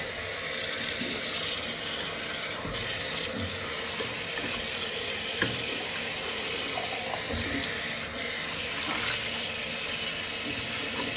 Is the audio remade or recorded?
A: recorded